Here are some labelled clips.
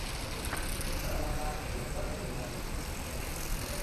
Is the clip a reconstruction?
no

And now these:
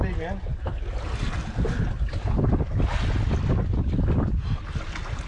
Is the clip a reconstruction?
no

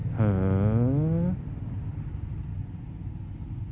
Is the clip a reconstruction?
no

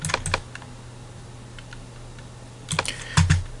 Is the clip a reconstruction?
no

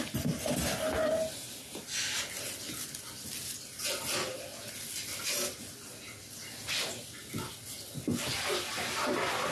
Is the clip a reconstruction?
no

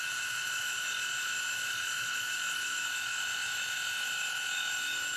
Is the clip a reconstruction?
yes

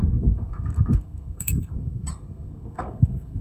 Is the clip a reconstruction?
yes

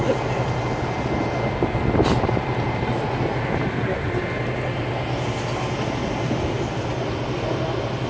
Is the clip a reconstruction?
no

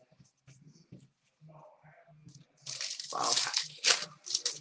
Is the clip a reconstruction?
no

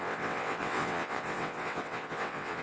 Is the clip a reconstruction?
yes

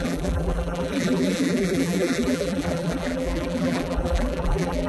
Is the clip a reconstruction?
yes